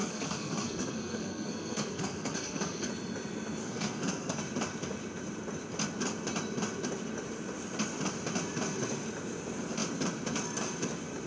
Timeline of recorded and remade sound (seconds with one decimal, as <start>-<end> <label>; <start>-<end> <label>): 0.0-2.9 remade; 2.9-3.6 recorded; 3.6-4.4 remade; 4.4-11.3 recorded